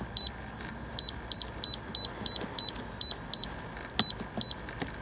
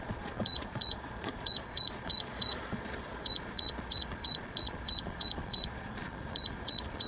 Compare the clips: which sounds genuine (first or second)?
first